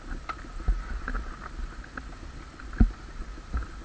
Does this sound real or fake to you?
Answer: real